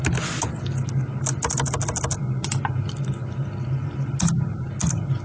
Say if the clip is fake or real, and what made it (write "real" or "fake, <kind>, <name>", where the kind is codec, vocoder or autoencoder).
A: real